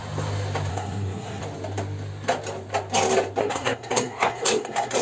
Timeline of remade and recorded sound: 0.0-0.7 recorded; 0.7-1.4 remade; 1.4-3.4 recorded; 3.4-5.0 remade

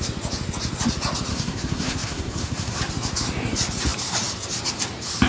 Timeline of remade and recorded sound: 0.0-1.3 recorded; 1.3-2.8 remade; 2.8-5.3 recorded